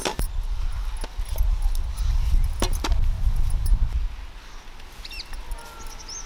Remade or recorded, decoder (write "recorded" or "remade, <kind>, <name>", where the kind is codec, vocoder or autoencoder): recorded